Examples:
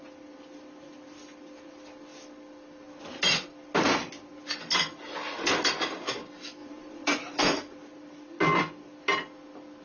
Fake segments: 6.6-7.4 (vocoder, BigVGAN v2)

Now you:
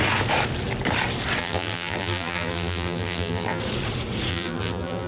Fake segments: 1.4-3.6 (vocoder, BigVGAN v2); 4.3-5.1

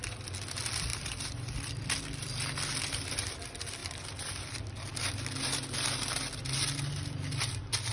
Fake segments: 0.9-2.3 (vocoder, BigVGAN v2); 3.8-4.5

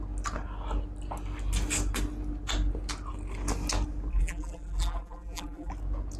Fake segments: 4.1-5.7 (vocoder, BigVGAN v2)

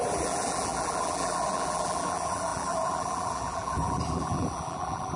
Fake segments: 0.0-5.2 (vocoder, BigVGAN v2)